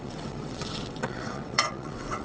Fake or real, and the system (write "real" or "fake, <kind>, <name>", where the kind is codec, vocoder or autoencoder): fake, vocoder, WaveNeXt